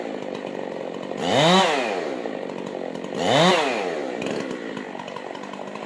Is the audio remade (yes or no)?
no